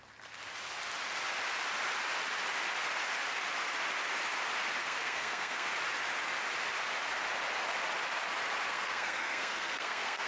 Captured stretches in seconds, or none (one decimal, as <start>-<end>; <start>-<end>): 0.0-4.8; 5.7-8.7